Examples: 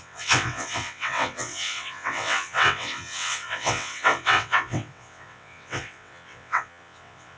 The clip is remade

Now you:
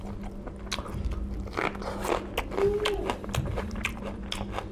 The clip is recorded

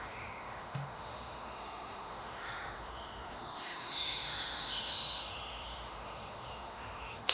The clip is remade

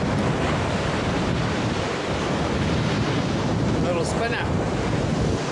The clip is remade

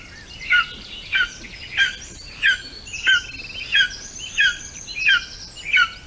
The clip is recorded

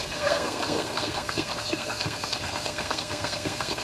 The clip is remade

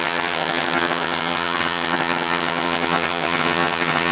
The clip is remade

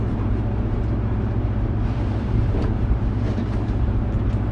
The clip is remade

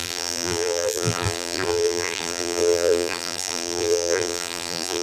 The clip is remade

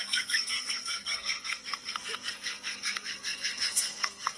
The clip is remade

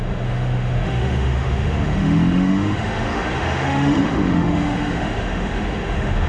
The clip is remade